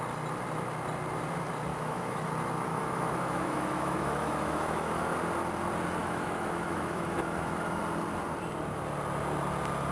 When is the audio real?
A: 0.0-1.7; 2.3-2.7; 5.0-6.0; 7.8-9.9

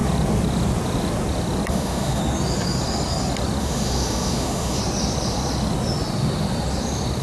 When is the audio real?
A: 0.0-1.7; 2.2-3.6; 4.8-7.2